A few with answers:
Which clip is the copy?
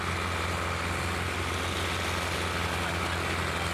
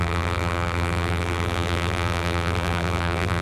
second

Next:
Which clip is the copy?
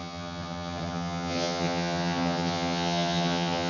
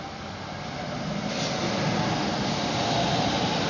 first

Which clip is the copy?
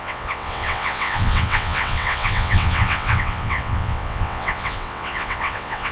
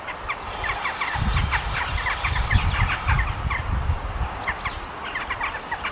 first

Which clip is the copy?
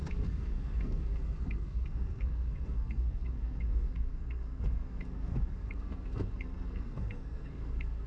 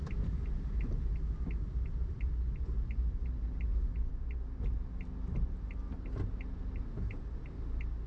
first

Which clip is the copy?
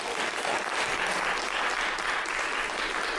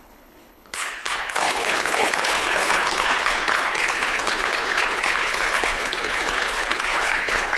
second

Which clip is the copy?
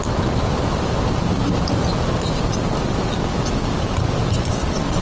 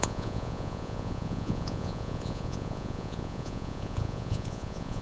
second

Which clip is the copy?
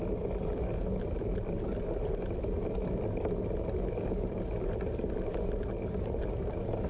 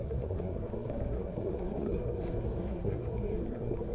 second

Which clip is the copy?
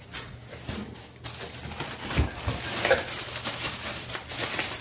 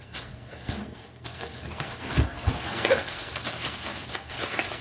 second